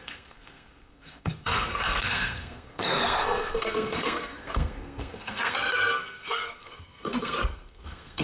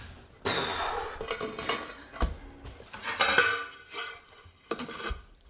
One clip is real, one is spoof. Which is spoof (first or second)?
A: first